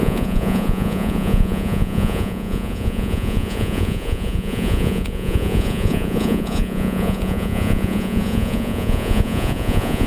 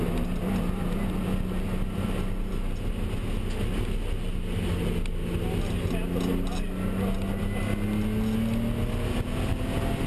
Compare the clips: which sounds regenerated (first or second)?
first